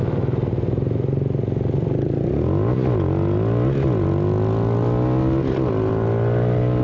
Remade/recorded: recorded